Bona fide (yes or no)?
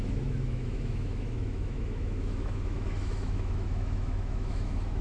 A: no